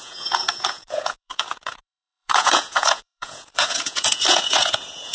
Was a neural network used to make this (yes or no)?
yes